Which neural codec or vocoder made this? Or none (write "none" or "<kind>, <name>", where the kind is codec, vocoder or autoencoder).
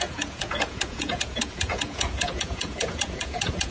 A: vocoder, Vocos